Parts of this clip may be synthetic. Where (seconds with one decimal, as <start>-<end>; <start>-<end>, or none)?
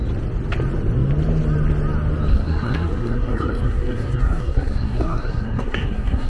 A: 2.3-6.3